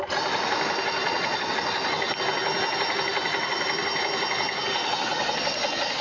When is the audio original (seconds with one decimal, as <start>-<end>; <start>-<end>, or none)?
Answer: 0.0-1.0; 1.5-6.0